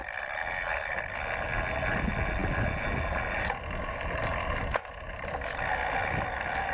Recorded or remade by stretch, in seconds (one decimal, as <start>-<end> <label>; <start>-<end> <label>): 0.0-6.7 recorded